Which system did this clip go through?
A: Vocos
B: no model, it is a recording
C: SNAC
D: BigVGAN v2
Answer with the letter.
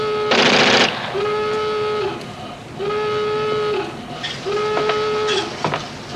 B